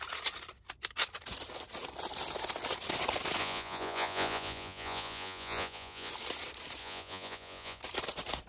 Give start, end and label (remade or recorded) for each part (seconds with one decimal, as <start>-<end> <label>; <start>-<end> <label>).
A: 0.0-3.4 recorded; 3.4-6.1 remade; 6.1-6.8 recorded; 6.8-7.8 remade; 7.8-8.5 recorded